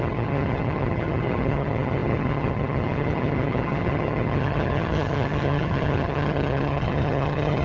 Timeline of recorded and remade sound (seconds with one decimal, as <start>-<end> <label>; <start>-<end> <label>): 0.0-7.6 remade